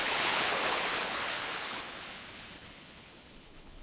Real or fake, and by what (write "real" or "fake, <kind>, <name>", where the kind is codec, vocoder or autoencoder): fake, codec, HILCodec